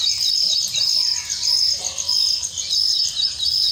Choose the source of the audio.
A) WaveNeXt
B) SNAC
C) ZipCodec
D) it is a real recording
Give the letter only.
D